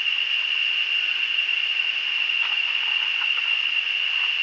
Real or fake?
real